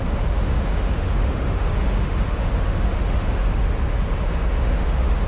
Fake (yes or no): yes